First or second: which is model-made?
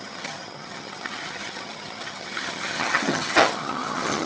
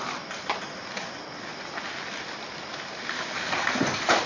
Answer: first